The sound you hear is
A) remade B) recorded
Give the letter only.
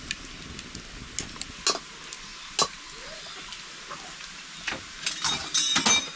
B